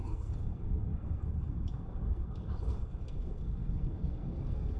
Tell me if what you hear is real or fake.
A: fake